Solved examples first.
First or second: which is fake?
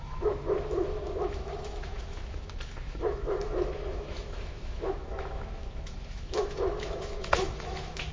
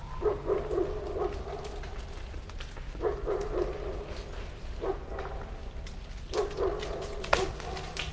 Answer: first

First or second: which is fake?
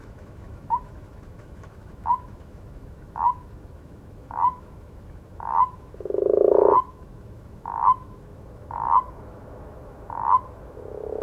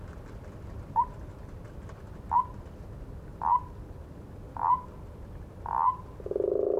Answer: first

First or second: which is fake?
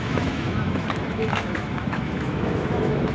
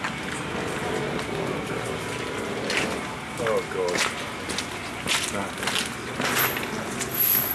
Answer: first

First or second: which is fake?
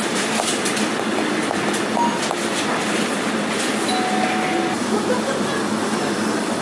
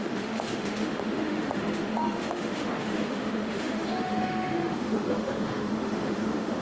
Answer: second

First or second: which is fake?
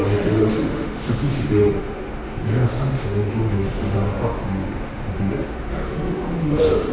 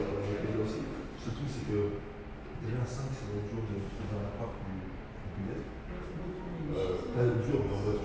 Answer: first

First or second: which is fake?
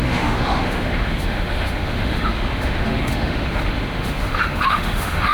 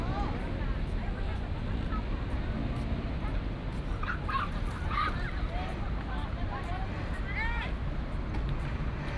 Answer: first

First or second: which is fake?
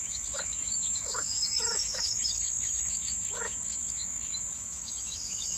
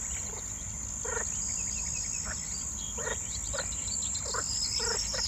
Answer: first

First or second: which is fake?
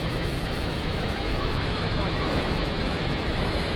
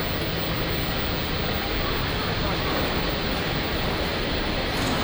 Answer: first